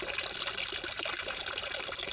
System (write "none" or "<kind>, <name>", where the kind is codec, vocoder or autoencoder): none